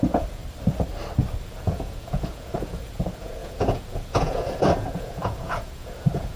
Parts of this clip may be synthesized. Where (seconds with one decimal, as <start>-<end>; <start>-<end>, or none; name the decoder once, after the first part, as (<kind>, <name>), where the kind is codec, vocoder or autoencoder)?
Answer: 0.0-0.4 (vocoder, Vocos); 1.4-6.4